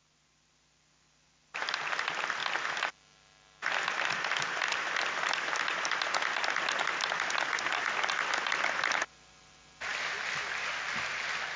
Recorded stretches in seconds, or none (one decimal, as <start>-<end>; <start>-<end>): 0.0-11.6